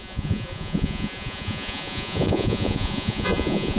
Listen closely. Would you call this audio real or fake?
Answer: fake